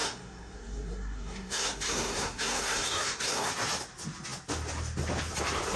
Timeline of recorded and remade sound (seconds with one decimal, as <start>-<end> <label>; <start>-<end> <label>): 0.0-3.5 remade; 3.5-5.8 recorded